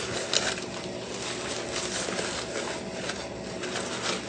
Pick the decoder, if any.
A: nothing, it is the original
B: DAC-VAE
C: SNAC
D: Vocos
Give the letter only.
A